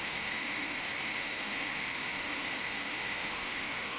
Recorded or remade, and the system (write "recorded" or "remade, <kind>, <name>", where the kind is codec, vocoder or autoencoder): remade, autoencoder, DAC-VAE